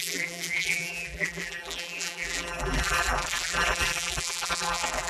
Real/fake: fake